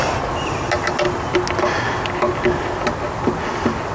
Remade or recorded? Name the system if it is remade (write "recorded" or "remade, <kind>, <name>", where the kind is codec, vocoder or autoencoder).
recorded